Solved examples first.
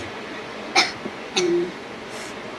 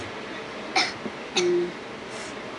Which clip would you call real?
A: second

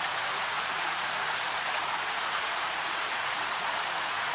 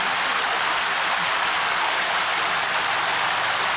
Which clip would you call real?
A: second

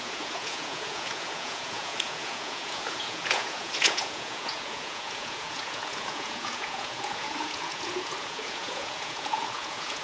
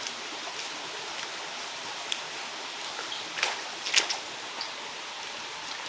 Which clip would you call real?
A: second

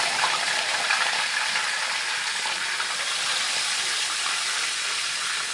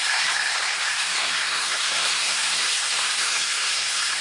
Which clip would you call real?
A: first